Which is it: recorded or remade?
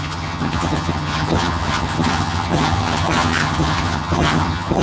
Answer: remade